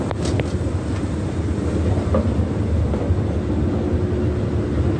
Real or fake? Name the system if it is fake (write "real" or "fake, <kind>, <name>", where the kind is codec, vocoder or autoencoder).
real